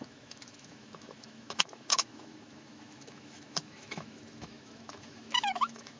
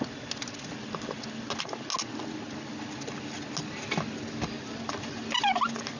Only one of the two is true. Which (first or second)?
second